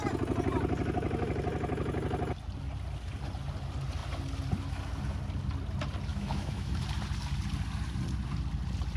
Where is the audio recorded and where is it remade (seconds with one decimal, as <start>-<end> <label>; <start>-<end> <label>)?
0.0-6.1 recorded; 6.1-6.8 remade; 6.8-9.0 recorded